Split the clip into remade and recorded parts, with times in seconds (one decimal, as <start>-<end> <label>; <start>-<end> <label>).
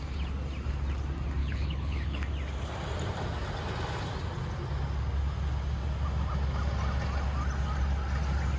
0.0-1.4 recorded; 1.4-2.3 remade; 2.3-8.6 recorded